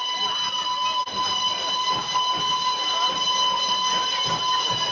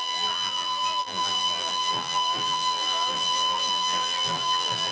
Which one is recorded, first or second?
first